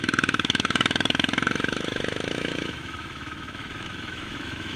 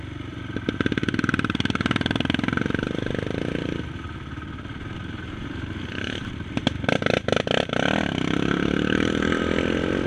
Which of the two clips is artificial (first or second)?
first